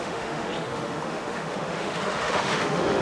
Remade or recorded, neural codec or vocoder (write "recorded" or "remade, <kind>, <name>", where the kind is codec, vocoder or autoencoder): remade, autoencoder, DAC-VAE